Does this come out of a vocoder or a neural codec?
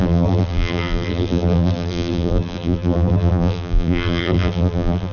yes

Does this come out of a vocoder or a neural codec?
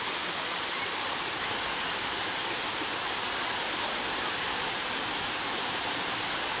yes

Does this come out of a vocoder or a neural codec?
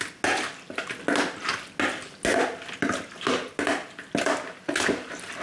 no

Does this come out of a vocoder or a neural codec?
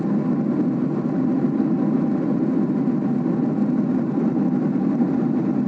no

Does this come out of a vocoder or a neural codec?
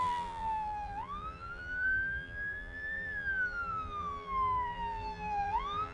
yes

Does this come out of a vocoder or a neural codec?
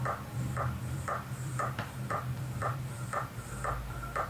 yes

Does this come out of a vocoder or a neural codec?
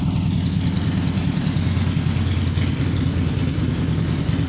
no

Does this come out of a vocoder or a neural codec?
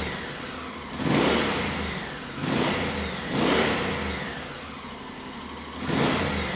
no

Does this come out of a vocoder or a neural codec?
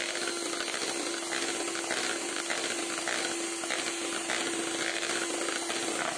no